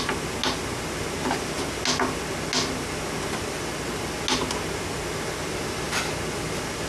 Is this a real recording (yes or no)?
yes